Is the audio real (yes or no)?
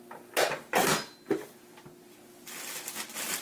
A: yes